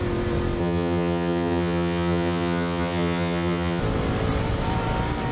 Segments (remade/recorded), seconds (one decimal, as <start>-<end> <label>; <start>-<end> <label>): 0.0-0.6 recorded; 0.6-3.8 remade; 3.8-5.3 recorded